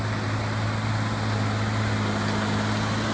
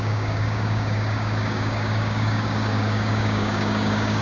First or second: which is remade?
second